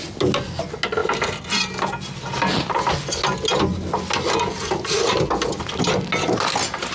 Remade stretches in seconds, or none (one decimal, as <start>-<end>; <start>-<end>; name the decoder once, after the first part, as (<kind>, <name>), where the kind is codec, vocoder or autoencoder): none